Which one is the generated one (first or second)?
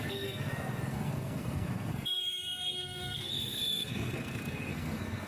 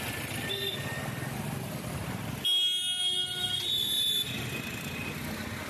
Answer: first